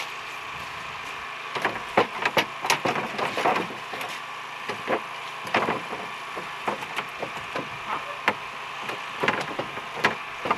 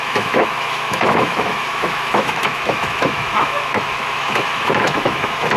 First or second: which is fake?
second